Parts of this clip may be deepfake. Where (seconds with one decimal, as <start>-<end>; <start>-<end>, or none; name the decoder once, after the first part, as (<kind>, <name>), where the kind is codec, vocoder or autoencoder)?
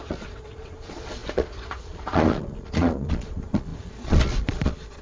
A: 0.0-5.0 (vocoder, Vocos)